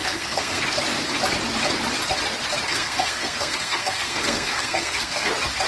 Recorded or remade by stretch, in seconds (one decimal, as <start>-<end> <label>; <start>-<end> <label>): 0.0-0.6 remade; 0.6-2.7 recorded; 2.7-5.3 remade; 5.3-5.7 recorded

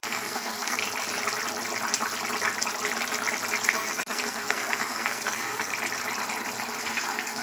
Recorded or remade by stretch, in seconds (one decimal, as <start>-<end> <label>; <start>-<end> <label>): 0.0-0.8 remade; 0.8-3.6 recorded; 3.6-5.7 remade; 5.7-6.8 recorded; 6.8-7.4 remade

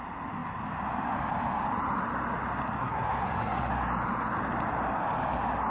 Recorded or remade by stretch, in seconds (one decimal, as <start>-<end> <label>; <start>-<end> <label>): 0.0-2.8 recorded; 2.8-3.7 remade; 3.7-5.7 recorded

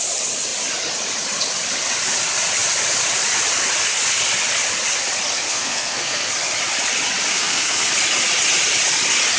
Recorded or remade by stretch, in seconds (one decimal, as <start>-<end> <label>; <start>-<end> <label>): 0.0-5.5 recorded; 5.5-6.3 remade; 6.3-7.3 recorded; 7.3-7.9 remade; 7.9-9.4 recorded